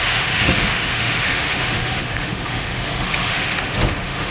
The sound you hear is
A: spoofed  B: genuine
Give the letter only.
A